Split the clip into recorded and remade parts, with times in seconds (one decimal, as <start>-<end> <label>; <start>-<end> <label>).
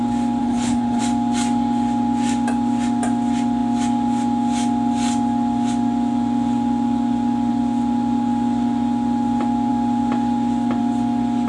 0.0-0.4 recorded; 0.4-1.0 remade; 1.0-11.5 recorded